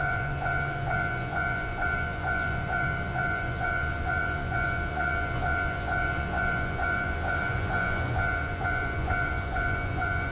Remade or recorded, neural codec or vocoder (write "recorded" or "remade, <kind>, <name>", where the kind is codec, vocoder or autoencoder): remade, vocoder, Vocos